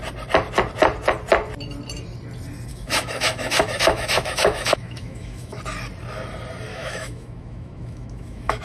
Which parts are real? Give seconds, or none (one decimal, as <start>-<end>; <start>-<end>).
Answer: 0.0-2.7; 5.6-6.7